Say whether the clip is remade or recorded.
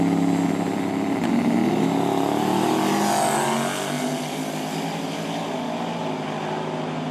recorded